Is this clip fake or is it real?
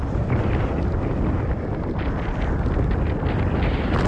real